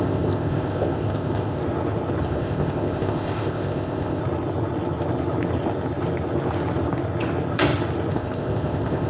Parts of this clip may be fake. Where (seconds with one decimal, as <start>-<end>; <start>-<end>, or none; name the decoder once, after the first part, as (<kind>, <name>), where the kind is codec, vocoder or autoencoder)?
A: 0.0-1.6 (codec, ZipCodec); 2.2-4.2; 8.1-9.1